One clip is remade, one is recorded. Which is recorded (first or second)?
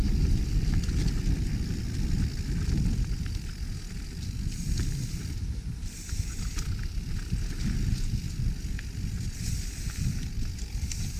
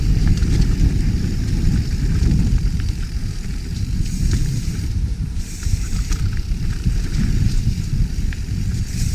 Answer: first